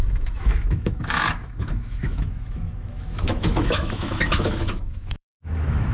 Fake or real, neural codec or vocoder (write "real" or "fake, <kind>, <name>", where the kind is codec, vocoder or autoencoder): fake, autoencoder, DAC-VAE